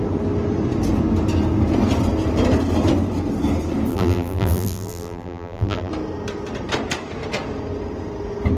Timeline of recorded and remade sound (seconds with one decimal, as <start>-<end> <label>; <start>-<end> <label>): 0.0-3.9 recorded; 3.9-5.9 remade; 5.9-8.6 recorded